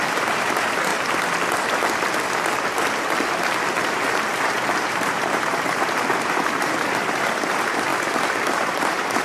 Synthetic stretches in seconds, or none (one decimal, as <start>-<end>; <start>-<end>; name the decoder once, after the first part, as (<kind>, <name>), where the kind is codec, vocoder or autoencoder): 0.0-0.9 (vocoder, BigVGAN v2); 3.8-9.2